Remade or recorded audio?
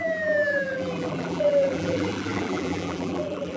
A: remade